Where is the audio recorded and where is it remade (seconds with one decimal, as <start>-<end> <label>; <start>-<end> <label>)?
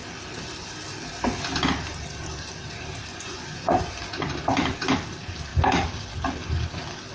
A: 0.0-3.1 recorded; 3.1-3.8 remade; 3.8-7.1 recorded